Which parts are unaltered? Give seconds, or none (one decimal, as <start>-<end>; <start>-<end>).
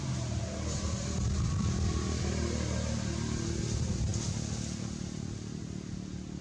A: 0.0-6.4